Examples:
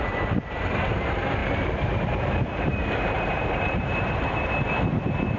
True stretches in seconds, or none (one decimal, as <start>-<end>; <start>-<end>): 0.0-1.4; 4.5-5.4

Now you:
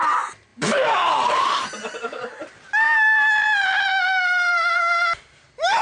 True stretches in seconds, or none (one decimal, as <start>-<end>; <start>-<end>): none

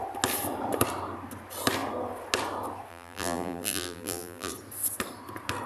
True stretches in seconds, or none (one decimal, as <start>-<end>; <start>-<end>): 0.0-2.9; 4.5-5.7

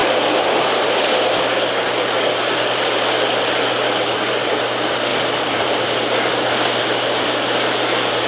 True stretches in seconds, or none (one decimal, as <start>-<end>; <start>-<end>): 0.0-5.1; 5.9-8.3